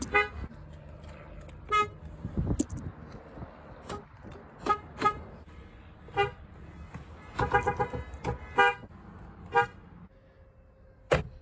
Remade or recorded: recorded